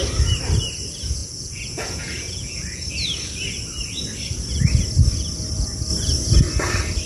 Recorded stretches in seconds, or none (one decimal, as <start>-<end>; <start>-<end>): 0.0-1.2; 2.9-7.1

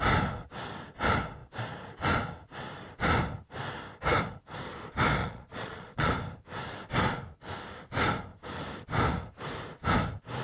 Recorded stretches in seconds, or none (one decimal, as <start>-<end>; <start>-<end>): 0.0-5.2; 6.1-10.4

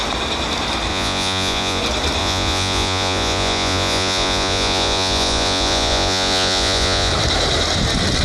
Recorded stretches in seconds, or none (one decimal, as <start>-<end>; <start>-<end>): 0.0-0.9; 1.8-2.2; 7.1-8.2

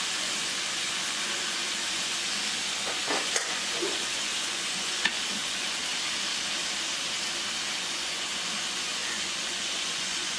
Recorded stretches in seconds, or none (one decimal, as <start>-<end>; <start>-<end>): 5.8-7.8

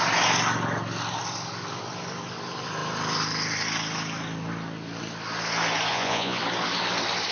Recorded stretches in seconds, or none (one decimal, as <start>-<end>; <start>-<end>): 0.0-5.9; 6.4-7.3

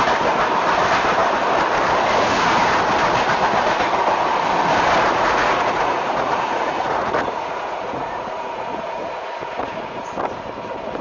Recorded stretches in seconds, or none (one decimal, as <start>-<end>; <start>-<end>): 0.0-5.1; 10.1-11.0

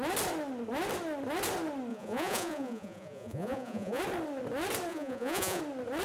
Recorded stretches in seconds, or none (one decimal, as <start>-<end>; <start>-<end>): 0.0-1.9; 4.0-4.9; 5.6-6.0